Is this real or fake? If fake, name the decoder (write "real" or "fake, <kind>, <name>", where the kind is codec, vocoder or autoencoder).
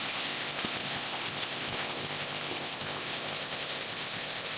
fake, codec, ZipCodec